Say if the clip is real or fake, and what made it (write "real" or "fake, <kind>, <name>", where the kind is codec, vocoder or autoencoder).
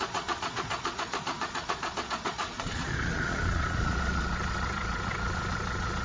fake, vocoder, Vocos